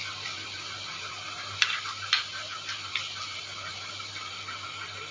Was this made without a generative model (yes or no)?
yes